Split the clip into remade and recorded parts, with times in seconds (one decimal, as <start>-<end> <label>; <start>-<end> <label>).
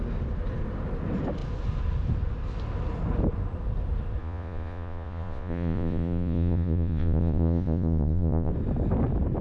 0.0-4.2 recorded; 4.2-8.5 remade; 8.5-9.4 recorded